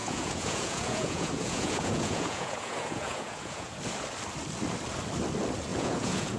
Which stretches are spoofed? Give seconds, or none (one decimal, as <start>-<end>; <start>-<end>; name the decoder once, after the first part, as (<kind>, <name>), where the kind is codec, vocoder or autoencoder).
0.0-3.8 (vocoder, Vocos); 5.7-6.4